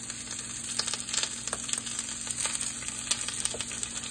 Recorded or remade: recorded